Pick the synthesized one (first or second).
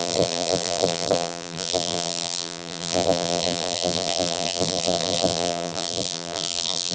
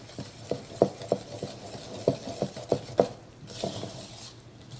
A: first